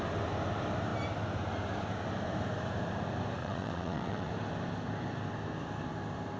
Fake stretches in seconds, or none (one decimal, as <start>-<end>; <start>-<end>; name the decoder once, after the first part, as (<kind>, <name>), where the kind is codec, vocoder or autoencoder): 3.4-4.3 (vocoder, Vocos)